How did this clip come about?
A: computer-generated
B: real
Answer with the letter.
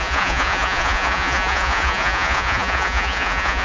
A